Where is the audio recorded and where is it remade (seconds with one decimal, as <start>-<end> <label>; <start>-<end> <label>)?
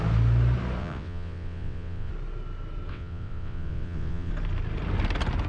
0.0-0.8 recorded; 0.8-2.1 remade; 2.1-2.9 recorded; 2.9-4.3 remade; 4.3-5.5 recorded